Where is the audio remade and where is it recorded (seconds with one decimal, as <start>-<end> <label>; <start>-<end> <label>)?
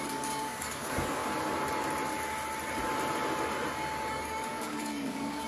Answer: 0.0-1.2 remade; 1.2-4.1 recorded; 4.1-5.5 remade